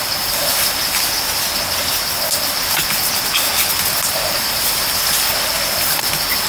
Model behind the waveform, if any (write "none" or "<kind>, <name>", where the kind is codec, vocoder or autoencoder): none